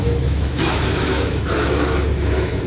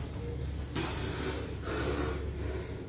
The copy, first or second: first